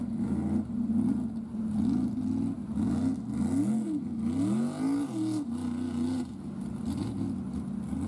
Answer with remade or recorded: recorded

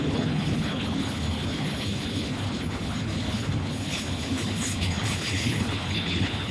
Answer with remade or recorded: remade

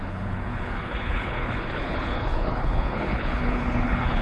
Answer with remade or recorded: remade